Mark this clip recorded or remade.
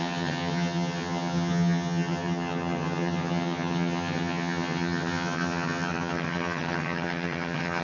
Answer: remade